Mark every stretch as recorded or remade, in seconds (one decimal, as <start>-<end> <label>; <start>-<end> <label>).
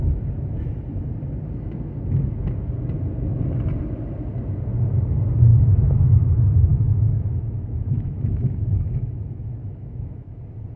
0.0-5.5 recorded; 5.5-6.2 remade; 6.2-6.7 recorded; 6.7-9.2 remade; 9.2-9.6 recorded; 9.6-10.3 remade; 10.3-10.8 recorded